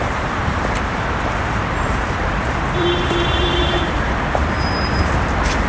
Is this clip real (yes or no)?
no